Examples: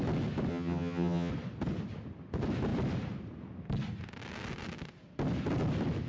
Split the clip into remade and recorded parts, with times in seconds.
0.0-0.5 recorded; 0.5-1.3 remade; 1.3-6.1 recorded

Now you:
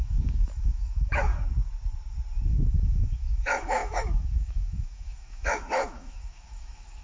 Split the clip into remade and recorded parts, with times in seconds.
0.0-1.3 remade; 1.3-2.5 recorded; 2.5-7.0 remade

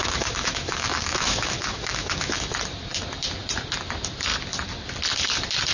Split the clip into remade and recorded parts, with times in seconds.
0.0-2.5 remade; 2.5-5.7 recorded

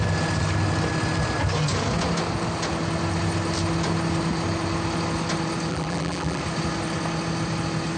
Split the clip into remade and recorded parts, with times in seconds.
0.0-5.7 recorded; 5.7-6.4 remade; 6.4-8.0 recorded

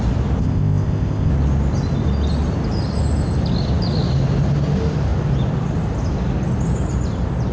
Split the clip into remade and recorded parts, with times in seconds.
0.0-0.4 recorded; 0.4-1.3 remade; 1.3-7.5 recorded